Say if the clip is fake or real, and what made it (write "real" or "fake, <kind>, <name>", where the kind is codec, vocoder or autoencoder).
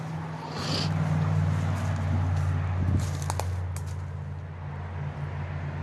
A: real